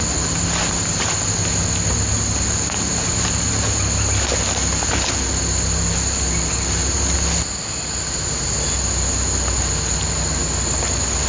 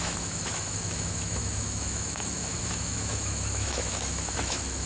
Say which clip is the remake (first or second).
second